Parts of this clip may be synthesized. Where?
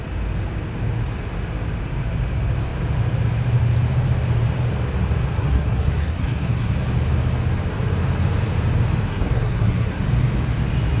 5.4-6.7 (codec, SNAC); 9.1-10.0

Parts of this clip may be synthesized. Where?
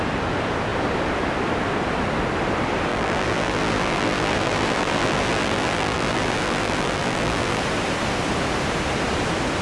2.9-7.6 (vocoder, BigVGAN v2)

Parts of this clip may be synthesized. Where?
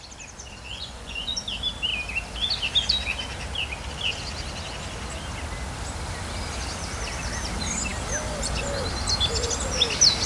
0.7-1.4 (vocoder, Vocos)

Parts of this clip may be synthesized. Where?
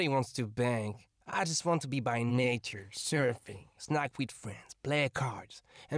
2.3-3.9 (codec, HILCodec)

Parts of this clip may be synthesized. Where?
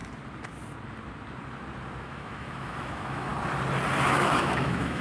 2.0-3.3 (autoencoder, DAC-VAE); 4.0-5.0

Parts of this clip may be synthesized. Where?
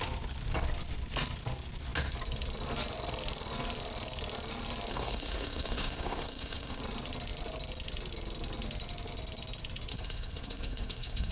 4.9-6.8 (codec, SNAC); 9.9-11.3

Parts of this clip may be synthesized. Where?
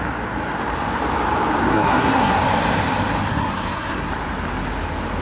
1.7-2.4 (codec, SNAC); 3.3-4.1